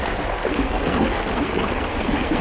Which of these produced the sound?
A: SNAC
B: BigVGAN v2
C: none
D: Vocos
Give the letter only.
A